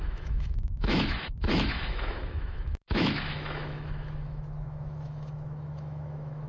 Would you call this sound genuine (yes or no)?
no